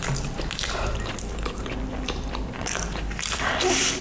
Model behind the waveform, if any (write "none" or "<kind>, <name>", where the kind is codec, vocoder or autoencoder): vocoder, BigVGAN v2